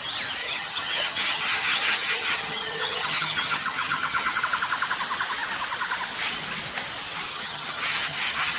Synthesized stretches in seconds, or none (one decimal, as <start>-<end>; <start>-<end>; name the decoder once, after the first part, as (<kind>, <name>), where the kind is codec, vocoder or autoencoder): 0.4-4.4 (vocoder, HiFi-GAN); 7.3-8.6